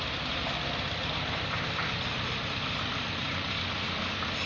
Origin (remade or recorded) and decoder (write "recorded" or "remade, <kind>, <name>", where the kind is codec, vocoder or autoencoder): remade, vocoder, BigVGAN v2